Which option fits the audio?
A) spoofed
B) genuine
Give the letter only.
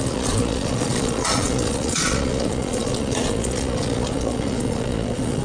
A